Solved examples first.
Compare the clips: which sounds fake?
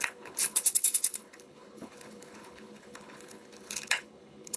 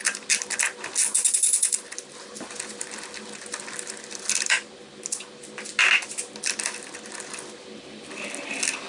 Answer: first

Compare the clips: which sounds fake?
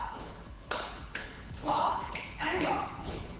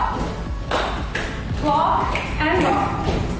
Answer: first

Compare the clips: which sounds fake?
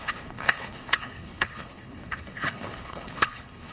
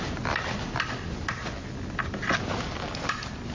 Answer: first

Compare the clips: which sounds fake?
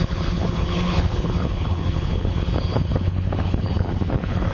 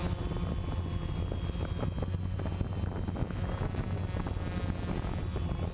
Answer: first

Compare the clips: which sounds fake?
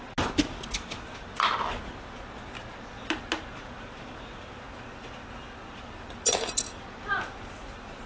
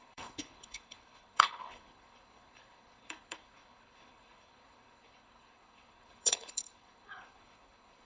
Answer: second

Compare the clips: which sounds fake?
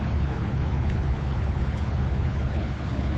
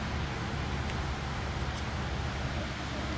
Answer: first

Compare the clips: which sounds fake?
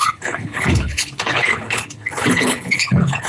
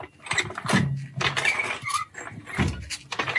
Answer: first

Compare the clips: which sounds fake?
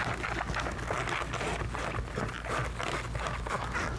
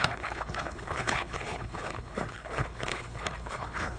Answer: second